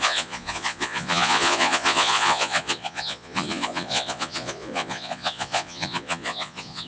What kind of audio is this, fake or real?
fake